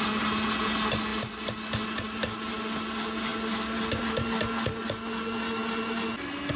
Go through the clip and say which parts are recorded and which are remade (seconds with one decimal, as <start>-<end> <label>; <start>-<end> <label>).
0.0-6.6 recorded